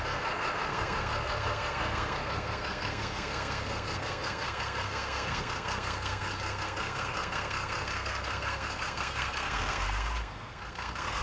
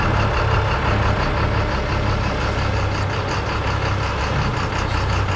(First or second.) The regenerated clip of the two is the first